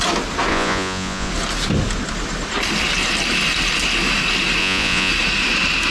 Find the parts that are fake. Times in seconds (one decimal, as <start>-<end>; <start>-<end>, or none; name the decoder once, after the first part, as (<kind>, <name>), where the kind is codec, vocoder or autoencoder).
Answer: 0.5-1.3 (vocoder, Vocos); 4.6-5.1